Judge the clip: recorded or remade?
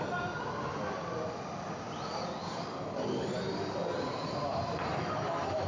recorded